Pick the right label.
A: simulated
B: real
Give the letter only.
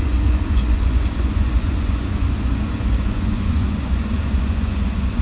A